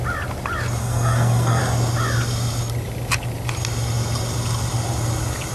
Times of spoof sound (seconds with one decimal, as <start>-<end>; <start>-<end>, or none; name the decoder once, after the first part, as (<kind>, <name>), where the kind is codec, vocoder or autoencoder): 0.8-1.6 (codec, SNAC)